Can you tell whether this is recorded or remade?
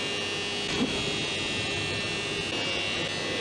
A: recorded